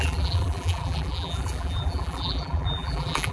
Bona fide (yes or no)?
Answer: no